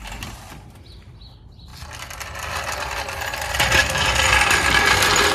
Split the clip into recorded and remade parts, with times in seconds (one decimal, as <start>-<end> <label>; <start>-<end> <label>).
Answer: 0.0-5.3 recorded